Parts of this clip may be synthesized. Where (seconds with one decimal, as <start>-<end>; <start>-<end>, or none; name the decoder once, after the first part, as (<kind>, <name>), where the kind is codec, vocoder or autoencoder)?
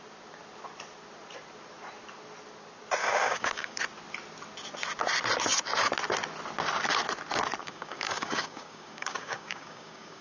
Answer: 3.0-3.8 (codec, DAC); 7.6-10.2